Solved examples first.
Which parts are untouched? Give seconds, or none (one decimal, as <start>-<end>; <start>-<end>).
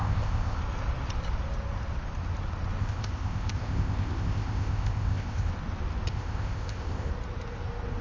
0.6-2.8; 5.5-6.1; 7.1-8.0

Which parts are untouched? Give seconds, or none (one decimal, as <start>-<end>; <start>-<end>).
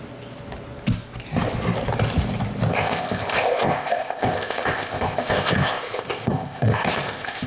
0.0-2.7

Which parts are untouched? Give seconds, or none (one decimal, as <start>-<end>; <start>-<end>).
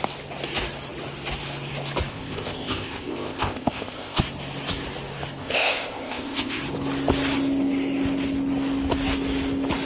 0.0-2.1; 4.2-5.4; 6.6-9.9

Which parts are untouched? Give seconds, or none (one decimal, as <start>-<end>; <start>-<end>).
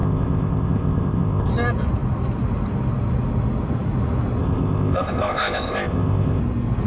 1.5-4.4; 6.4-6.9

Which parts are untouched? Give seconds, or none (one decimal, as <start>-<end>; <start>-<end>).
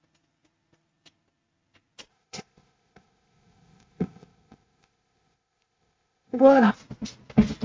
0.0-2.1; 6.7-7.6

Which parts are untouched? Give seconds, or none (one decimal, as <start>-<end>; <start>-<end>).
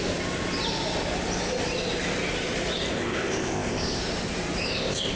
0.0-2.9; 4.0-4.6